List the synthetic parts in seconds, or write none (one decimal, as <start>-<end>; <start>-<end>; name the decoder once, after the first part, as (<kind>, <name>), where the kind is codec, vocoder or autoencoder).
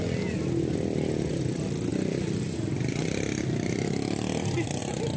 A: none